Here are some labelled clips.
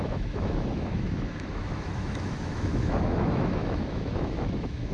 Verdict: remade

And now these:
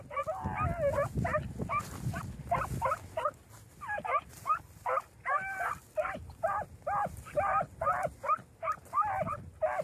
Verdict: recorded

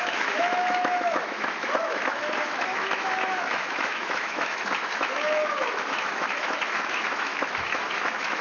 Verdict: remade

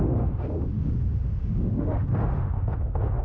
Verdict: remade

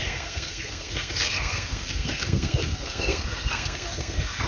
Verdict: remade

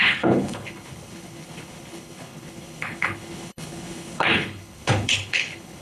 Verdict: remade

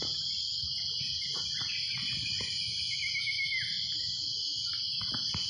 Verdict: recorded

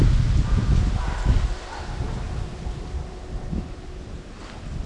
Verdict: recorded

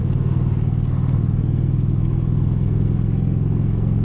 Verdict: remade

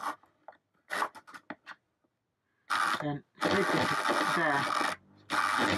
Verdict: recorded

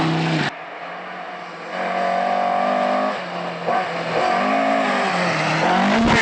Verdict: recorded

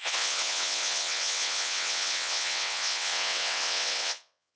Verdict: remade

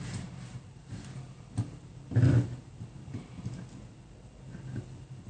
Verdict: recorded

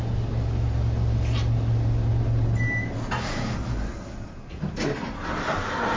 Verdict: recorded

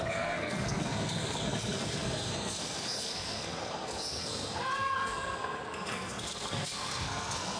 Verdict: remade